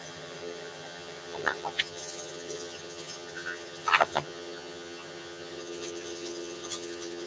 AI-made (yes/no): yes